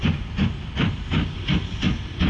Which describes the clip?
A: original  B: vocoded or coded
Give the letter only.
A